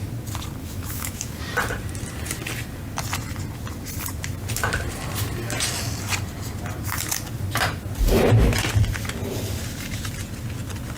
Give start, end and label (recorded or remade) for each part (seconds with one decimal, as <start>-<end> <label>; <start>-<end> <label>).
0.0-0.6 recorded; 0.6-1.4 remade; 1.4-11.0 recorded